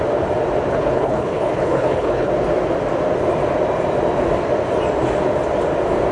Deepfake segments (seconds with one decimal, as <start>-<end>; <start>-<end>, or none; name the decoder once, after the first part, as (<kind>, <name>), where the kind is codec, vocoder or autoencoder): 0.7-2.3 (codec, HILCodec)